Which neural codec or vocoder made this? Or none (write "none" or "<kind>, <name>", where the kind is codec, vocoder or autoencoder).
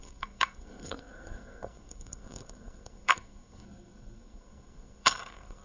codec, SNAC